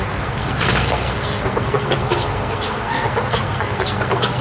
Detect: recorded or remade remade